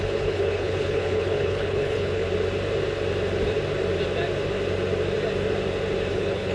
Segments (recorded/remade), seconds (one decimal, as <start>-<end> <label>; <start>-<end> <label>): 0.0-2.2 remade; 2.2-6.1 recorded; 6.1-6.5 remade

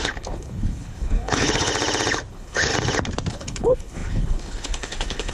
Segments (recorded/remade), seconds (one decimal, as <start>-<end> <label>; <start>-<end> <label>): 0.0-1.7 remade; 1.7-2.3 recorded; 2.3-2.7 remade; 2.7-3.3 recorded; 3.3-5.3 remade

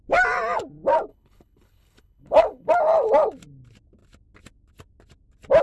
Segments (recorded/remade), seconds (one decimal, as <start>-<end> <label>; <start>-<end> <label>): 0.0-1.1 recorded; 1.1-2.7 remade; 2.7-5.6 recorded

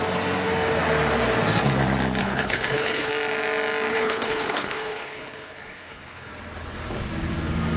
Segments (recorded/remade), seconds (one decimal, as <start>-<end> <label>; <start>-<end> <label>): 0.0-2.2 recorded; 2.2-3.1 remade; 3.1-3.9 recorded; 3.9-6.3 remade; 6.3-7.8 recorded

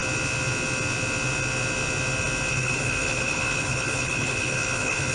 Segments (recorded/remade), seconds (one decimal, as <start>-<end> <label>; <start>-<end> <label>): 0.0-2.5 recorded; 2.5-5.1 remade